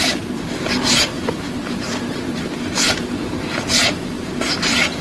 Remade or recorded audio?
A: remade